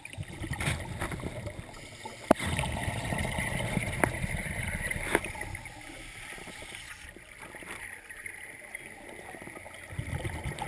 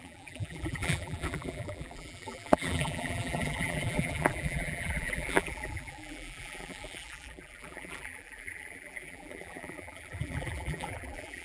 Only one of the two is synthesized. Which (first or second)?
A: second